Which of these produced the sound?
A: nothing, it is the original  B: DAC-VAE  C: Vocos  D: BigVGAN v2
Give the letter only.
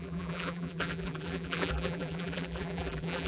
D